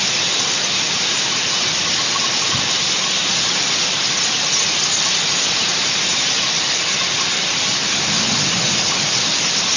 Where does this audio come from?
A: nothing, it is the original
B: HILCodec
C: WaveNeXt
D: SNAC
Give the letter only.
A